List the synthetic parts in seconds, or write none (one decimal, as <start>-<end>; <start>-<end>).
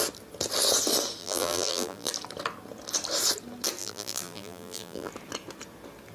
1.2-2.1; 3.8-5.1